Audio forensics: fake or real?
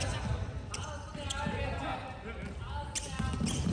real